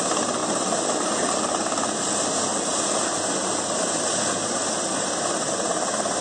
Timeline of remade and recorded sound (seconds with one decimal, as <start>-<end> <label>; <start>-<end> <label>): 0.0-6.2 recorded